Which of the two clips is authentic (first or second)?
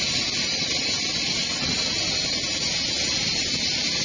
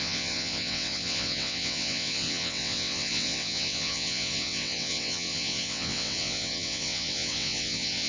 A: first